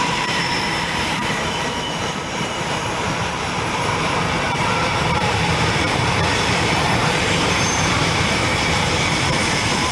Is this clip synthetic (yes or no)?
yes